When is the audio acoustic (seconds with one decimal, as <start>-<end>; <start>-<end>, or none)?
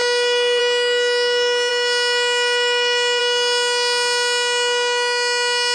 0.6-1.7; 3.2-5.7